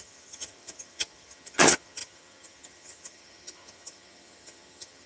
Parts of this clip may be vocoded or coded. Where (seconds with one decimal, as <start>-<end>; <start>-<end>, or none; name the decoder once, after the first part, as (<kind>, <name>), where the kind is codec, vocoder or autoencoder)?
0.0-5.1 (vocoder, HiFi-GAN)